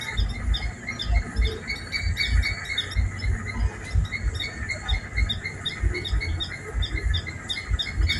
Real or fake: real